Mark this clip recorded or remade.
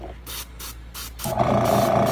recorded